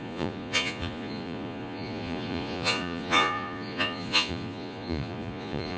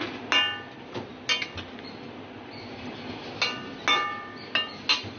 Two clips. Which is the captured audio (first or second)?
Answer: second